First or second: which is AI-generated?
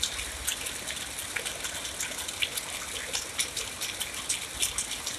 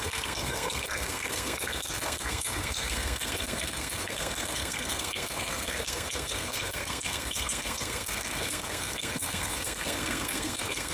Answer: second